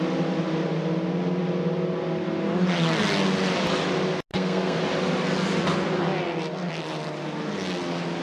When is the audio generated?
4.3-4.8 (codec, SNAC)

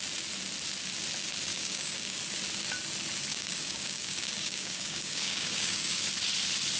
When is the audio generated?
1.5-2.2 (codec, DAC); 3.3-6.1

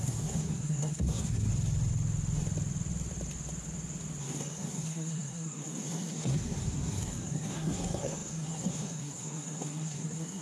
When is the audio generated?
0.0-1.5 (codec, SNAC); 4.2-10.4

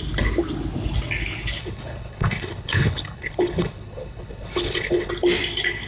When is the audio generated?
1.6-5.1 (codec, HILCodec)

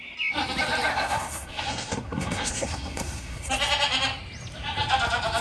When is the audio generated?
0.9-3.5 (codec, SNAC)

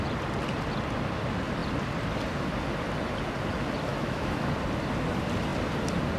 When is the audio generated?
3.9-4.5 (autoencoder, DAC-VAE)

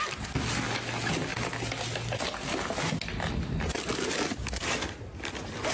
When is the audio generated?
none